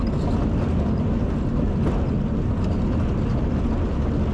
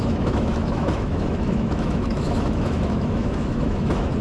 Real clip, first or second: first